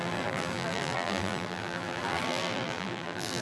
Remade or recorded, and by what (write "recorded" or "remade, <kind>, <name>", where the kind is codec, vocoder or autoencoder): remade, vocoder, BigVGAN v2